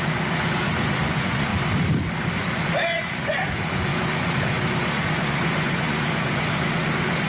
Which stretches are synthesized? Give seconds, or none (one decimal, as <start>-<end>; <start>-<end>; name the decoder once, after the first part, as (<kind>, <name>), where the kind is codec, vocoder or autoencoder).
0.0-1.5 (vocoder, Vocos); 2.4-7.3